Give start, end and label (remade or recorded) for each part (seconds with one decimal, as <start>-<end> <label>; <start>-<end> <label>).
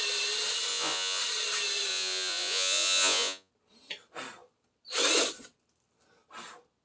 0.0-0.7 recorded; 0.7-1.2 remade; 1.2-1.9 recorded; 1.9-3.5 remade; 3.5-6.8 recorded